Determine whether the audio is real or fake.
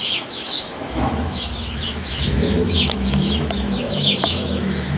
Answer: fake